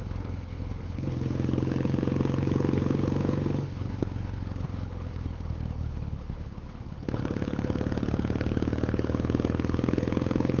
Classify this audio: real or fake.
fake